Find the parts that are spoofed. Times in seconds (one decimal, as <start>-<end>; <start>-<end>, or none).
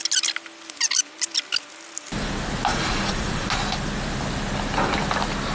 2.7-3.5